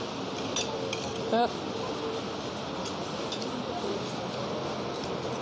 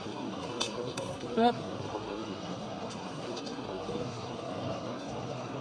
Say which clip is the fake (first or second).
second